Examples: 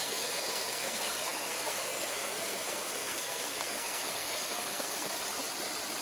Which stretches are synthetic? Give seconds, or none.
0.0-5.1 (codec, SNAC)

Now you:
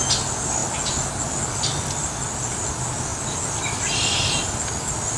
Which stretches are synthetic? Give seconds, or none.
none

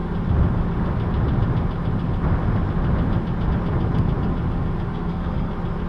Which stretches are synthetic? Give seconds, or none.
4.9-5.5 (codec, SNAC)

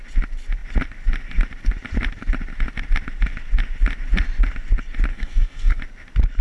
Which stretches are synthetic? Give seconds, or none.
5.1-5.8 (codec, SNAC)

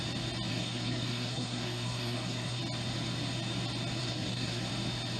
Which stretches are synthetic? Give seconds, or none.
0.5-2.6 (codec, SNAC); 4.0-4.7

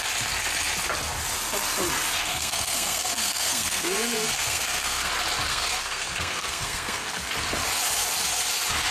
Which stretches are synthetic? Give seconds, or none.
2.2-5.1 (codec, SNAC); 5.5-7.3